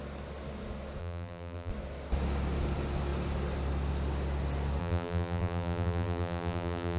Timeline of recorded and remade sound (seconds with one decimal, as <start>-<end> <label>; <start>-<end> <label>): 0.0-1.0 recorded; 1.0-1.7 remade; 1.7-4.8 recorded; 4.8-7.0 remade